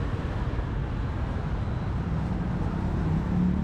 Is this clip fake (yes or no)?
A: no